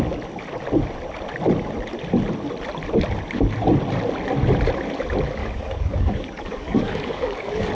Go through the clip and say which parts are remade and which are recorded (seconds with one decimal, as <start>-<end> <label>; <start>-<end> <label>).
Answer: 0.0-5.4 recorded; 5.4-7.7 remade